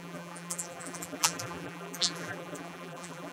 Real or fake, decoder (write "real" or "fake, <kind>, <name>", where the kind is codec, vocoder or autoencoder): fake, vocoder, BigVGAN v2